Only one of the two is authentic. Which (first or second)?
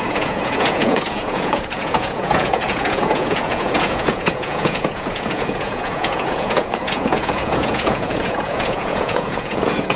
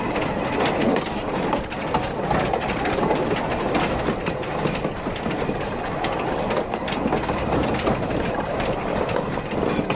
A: second